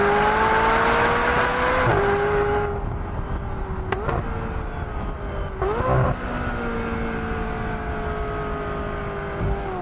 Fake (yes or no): no